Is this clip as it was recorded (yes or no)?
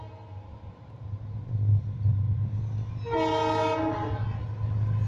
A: yes